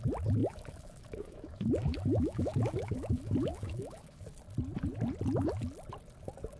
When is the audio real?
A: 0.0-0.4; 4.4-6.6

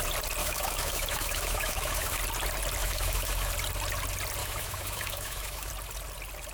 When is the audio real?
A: 0.0-0.4; 2.2-2.8; 3.5-4.4; 5.7-6.5

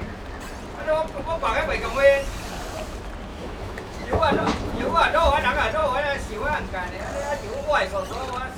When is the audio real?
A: 0.0-3.3; 5.3-8.6